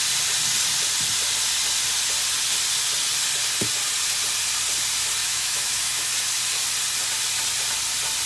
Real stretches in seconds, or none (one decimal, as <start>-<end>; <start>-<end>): 0.0-5.2; 6.1-8.3

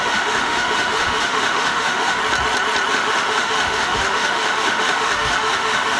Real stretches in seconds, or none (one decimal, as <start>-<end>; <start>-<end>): 2.2-2.9

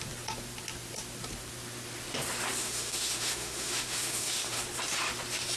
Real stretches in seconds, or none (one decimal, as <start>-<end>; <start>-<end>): 0.0-2.6; 4.6-5.6

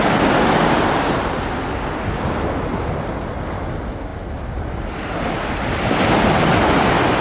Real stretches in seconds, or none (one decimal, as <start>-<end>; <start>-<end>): 0.0-7.2

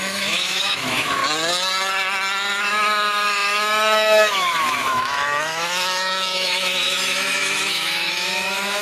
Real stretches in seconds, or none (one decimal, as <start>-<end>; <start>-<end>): 1.2-2.6

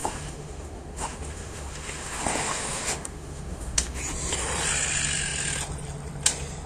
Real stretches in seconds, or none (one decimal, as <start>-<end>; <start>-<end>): 4.0-6.7